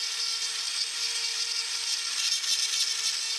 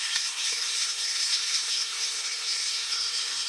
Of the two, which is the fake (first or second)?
second